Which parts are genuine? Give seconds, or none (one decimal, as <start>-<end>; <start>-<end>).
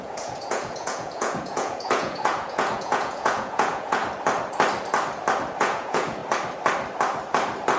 4.0-5.6; 6.2-7.8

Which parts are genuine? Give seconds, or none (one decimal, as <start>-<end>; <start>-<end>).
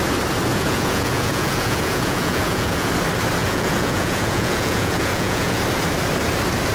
0.0-0.5; 2.9-3.4; 5.6-6.7